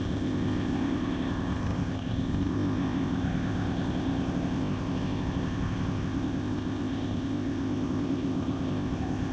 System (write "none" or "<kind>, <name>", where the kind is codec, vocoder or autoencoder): codec, ZipCodec